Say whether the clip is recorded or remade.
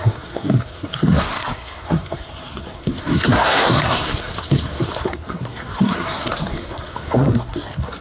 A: remade